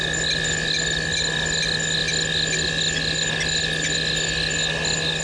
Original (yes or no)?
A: yes